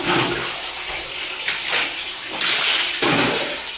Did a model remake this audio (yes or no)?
no